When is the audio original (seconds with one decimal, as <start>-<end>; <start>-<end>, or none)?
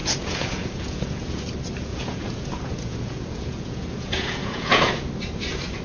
1.4-1.9; 5.1-5.8